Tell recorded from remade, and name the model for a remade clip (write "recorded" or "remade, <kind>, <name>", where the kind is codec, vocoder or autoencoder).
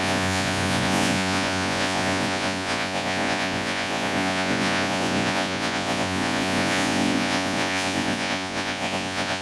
remade, vocoder, Vocos